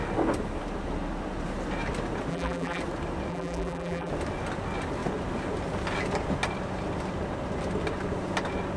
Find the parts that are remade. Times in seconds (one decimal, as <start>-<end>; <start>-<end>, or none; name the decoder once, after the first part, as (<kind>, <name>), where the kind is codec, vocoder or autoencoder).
2.3-2.8 (vocoder, BigVGAN v2); 3.3-4.1